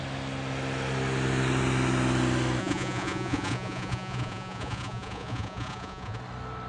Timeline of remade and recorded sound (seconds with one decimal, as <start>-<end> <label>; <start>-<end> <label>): 0.0-2.6 recorded; 2.6-6.2 remade; 6.2-6.7 recorded